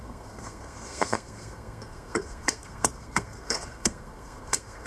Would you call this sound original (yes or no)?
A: no